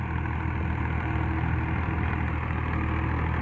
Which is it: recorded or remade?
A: recorded